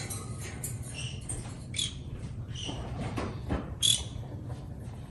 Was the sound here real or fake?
fake